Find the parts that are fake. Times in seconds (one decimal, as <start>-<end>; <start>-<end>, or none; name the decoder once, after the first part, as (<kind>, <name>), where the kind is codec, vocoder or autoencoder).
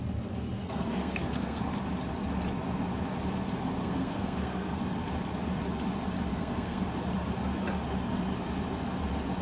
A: 0.6-1.6 (codec, SNAC); 3.8-4.8; 6.3-6.8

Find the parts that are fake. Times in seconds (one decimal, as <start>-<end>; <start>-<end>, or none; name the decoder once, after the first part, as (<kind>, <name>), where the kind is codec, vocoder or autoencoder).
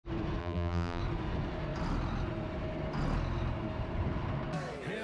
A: 0.4-1.0 (vocoder, BigVGAN v2)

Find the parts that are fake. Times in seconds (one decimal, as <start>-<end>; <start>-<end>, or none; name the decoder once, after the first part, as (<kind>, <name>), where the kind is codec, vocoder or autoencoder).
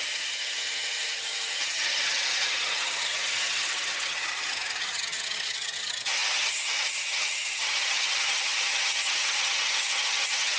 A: 0.0-10.6 (vocoder, HiFi-GAN)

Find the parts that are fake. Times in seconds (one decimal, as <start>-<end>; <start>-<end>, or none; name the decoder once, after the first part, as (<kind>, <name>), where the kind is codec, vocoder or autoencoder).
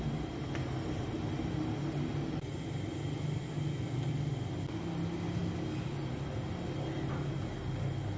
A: none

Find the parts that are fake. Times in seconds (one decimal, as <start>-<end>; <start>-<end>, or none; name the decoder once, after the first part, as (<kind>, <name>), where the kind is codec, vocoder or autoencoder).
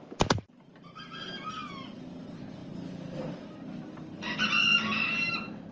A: none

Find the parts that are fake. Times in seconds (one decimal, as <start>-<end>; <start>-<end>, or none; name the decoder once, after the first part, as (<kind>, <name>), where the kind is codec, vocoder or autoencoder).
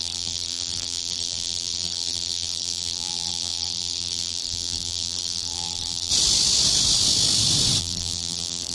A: 0.0-6.1 (vocoder, BigVGAN v2); 7.8-8.7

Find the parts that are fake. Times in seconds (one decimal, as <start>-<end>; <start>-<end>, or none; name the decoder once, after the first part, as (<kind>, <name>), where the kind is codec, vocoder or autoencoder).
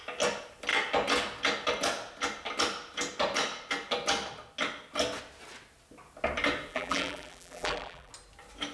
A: 6.7-8.1 (vocoder, BigVGAN v2)